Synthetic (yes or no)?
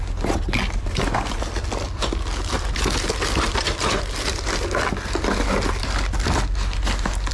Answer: no